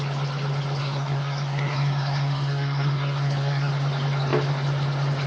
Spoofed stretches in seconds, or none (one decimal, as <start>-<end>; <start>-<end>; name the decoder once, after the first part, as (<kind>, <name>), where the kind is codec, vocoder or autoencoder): 0.8-3.7 (codec, SNAC)